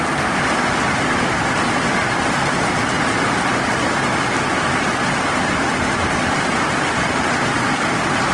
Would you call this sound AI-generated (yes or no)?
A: no